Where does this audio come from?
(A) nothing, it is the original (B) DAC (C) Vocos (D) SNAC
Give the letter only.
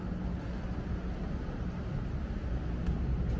A